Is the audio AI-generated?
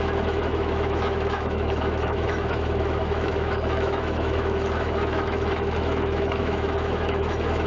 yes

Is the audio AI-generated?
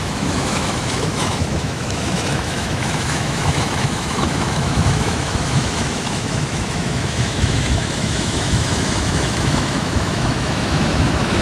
yes